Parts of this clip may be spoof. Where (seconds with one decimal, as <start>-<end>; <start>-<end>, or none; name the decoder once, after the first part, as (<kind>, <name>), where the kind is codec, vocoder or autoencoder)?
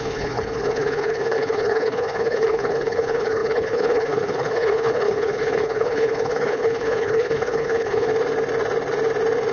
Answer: 0.0-8.1 (codec, HILCodec)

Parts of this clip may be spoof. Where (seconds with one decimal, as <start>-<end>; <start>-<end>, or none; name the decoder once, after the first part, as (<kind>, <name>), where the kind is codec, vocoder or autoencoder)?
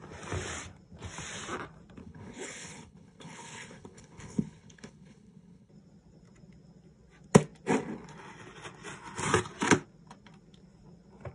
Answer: 2.0-5.7 (codec, HILCodec)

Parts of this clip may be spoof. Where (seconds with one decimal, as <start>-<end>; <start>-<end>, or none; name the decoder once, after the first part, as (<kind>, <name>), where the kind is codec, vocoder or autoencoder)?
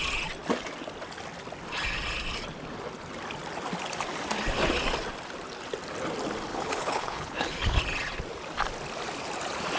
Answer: 6.5-7.8 (codec, HILCodec)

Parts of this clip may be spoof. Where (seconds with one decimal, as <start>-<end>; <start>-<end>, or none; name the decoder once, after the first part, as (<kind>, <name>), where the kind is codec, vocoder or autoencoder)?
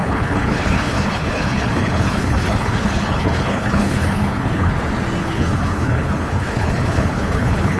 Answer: 0.0-4.7 (codec, HILCodec); 5.2-7.8